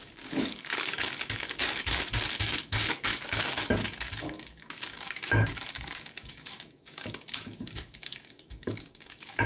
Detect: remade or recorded remade